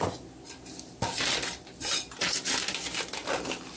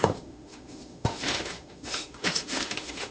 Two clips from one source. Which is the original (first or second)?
first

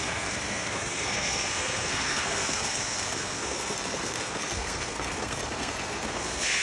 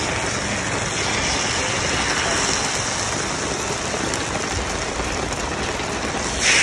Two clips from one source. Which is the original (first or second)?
second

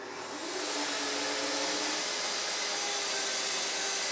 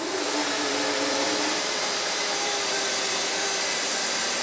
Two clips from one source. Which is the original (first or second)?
first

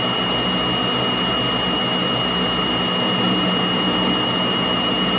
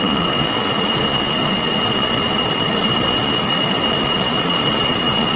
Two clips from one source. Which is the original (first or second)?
first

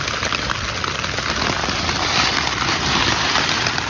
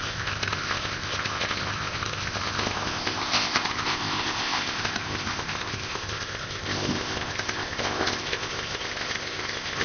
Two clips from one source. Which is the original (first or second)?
first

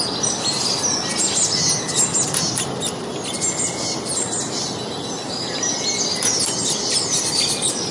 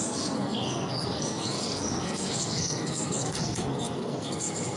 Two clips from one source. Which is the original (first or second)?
first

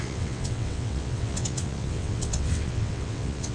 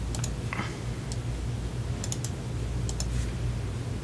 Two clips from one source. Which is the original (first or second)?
second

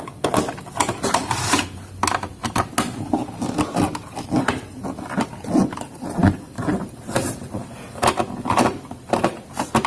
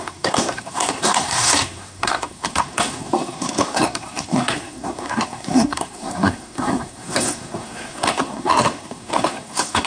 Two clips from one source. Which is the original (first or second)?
first